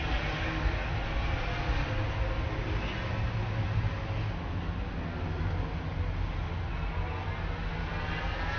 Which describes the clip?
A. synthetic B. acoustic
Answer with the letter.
B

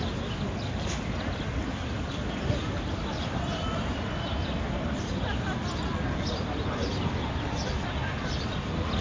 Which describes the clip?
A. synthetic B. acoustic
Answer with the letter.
B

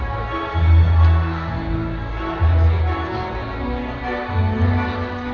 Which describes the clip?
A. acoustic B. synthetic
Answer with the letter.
A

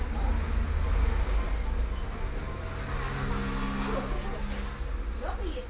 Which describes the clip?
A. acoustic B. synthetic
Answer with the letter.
A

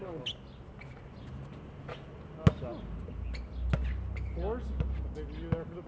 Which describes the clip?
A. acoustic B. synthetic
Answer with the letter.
A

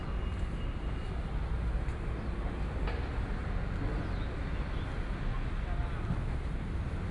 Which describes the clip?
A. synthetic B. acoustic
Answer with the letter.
B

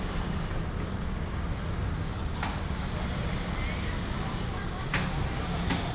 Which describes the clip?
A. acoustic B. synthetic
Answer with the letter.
A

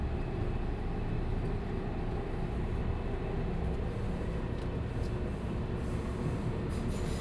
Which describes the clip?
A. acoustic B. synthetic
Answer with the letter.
A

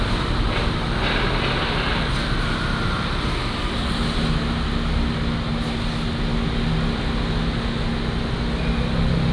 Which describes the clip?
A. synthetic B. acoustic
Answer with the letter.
B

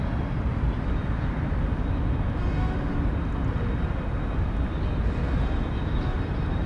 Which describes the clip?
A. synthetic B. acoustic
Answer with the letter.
B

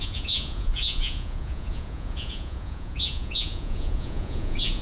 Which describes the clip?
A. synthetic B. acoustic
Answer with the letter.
A